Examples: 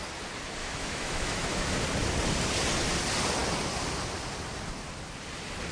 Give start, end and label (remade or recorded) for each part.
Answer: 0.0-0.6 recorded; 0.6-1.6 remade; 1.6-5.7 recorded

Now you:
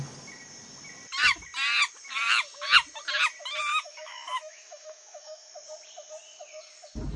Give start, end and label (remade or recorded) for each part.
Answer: 0.0-3.7 recorded; 3.7-5.5 remade; 5.5-7.2 recorded

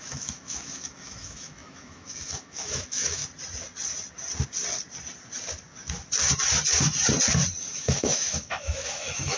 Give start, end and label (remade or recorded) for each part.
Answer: 0.0-3.2 remade; 3.2-7.6 recorded; 7.6-9.4 remade

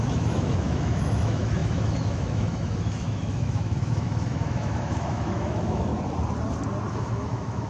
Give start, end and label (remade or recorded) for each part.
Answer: 0.0-5.9 remade; 5.9-6.9 recorded; 6.9-7.7 remade

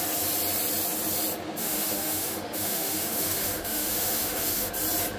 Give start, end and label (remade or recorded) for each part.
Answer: 0.0-1.6 recorded; 1.6-4.7 remade; 4.7-5.2 recorded

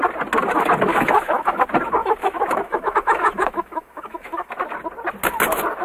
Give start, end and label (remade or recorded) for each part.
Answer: 0.0-0.9 recorded; 0.9-1.6 remade; 1.6-2.0 recorded; 2.0-4.5 remade; 4.5-5.8 recorded

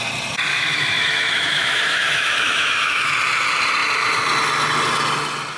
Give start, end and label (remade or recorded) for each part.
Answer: 0.0-0.5 recorded; 0.5-3.1 remade; 3.1-5.6 recorded